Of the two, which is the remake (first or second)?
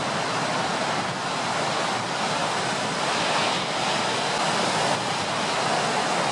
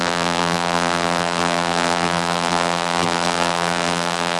second